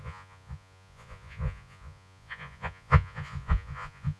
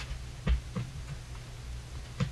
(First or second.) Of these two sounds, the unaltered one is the second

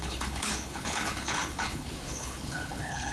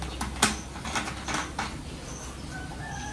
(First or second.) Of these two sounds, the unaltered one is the second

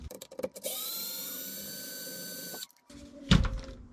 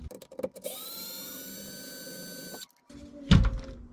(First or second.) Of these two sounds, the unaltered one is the second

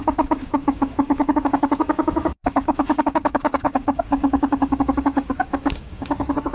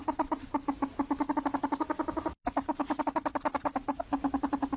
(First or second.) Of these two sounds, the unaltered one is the second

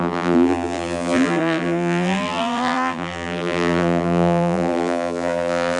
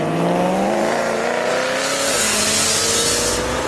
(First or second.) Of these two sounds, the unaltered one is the second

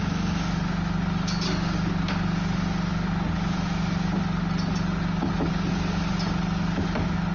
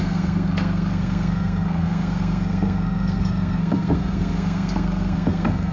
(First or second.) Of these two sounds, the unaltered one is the first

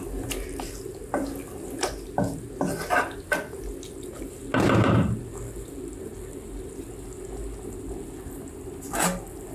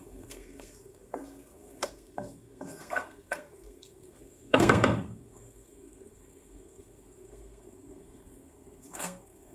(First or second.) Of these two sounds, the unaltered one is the first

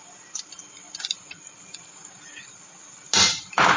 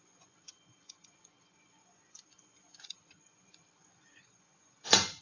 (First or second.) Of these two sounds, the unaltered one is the first